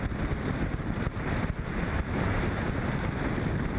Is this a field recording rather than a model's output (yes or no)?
yes